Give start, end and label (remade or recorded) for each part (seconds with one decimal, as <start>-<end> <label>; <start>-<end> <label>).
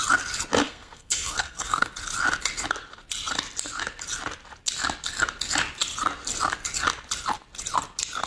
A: 0.0-0.6 recorded; 0.6-1.9 remade; 1.9-8.3 recorded